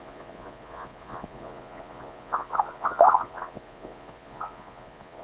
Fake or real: fake